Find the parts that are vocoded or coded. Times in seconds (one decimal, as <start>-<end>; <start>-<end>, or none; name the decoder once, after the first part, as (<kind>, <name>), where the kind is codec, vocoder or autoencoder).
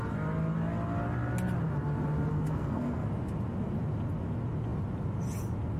2.3-3.1 (codec, SNAC)